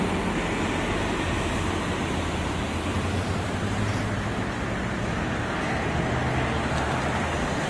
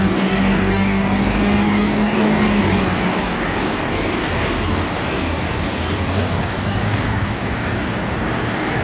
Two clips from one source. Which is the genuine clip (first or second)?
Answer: first